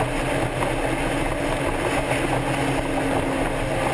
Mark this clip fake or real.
real